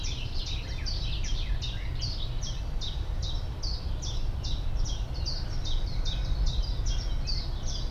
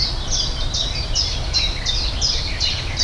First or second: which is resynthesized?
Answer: second